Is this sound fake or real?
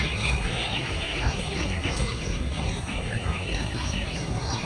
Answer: fake